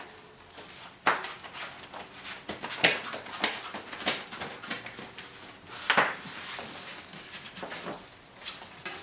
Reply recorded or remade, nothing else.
recorded